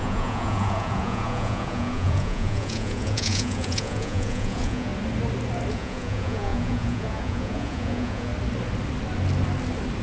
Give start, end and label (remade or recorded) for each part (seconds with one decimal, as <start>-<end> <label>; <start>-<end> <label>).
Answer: 0.0-4.9 remade; 4.9-5.7 recorded; 5.7-8.3 remade; 8.3-10.0 recorded